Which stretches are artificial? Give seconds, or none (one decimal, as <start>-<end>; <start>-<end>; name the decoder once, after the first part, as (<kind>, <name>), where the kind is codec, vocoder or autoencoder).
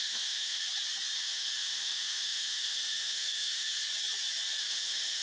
0.0-0.6 (autoencoder, DAC-VAE); 1.2-3.8; 4.6-5.2